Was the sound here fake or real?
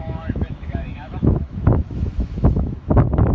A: fake